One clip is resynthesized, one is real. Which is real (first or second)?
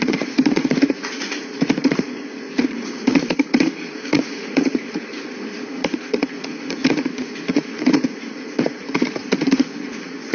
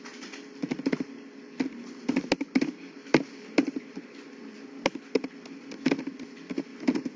second